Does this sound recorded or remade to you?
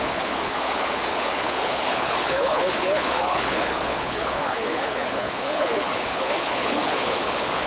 remade